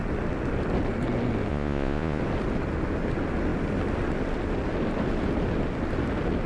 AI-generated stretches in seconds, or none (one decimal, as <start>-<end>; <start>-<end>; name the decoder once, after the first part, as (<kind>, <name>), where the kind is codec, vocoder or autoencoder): 1.5-2.2 (vocoder, Vocos)